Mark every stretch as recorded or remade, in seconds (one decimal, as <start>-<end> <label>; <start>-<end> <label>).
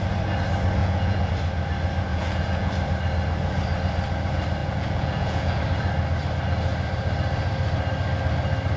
0.0-0.8 recorded; 0.8-1.3 remade; 1.3-2.1 recorded; 2.1-2.7 remade; 2.7-4.6 recorded; 4.6-5.6 remade; 5.6-8.8 recorded